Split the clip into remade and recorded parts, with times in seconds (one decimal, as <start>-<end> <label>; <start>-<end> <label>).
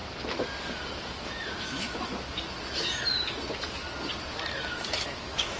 0.0-1.6 recorded; 1.6-2.1 remade; 2.1-4.7 recorded; 4.7-5.6 remade